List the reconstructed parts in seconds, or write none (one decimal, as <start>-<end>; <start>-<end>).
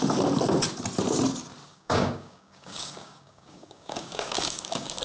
1.7-5.0